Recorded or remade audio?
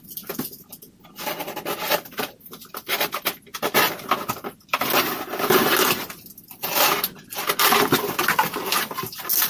recorded